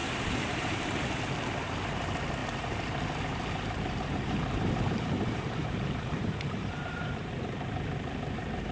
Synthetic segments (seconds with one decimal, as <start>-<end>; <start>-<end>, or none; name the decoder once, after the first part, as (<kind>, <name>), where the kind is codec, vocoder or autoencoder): 0.0-1.2 (vocoder, BigVGAN v2); 2.4-7.3